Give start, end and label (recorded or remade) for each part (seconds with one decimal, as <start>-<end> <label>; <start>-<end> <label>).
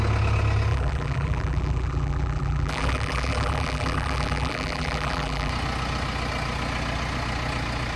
0.0-0.7 recorded; 0.7-5.5 remade; 5.5-8.0 recorded